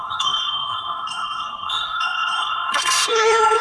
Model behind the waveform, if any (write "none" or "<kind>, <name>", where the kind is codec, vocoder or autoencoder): codec, SNAC